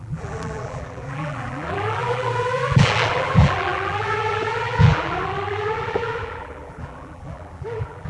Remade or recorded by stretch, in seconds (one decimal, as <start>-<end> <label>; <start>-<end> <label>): 0.0-8.1 remade